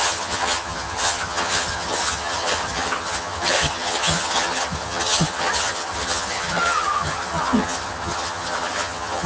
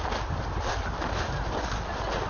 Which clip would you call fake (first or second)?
first